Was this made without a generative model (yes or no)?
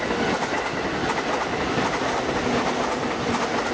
yes